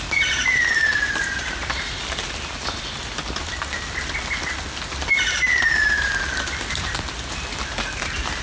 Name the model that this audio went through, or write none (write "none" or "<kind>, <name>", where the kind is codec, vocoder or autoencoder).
none